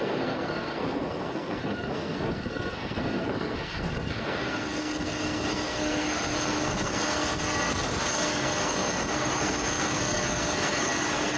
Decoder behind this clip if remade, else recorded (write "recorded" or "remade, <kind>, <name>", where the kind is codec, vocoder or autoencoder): remade, codec, SNAC